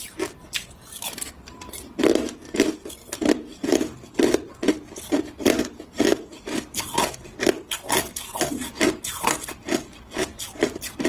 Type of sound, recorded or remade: recorded